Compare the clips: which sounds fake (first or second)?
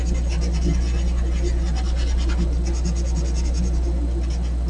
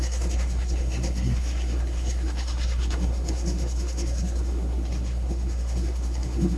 second